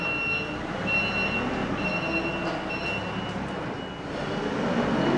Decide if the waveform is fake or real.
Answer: real